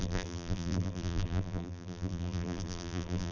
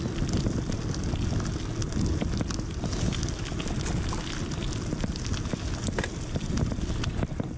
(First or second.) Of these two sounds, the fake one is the first